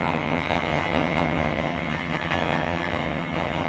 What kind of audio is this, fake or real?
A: fake